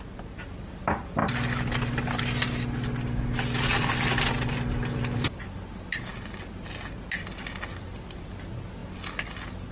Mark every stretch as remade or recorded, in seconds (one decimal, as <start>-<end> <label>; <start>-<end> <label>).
0.0-1.2 recorded; 1.2-2.2 remade; 2.2-9.7 recorded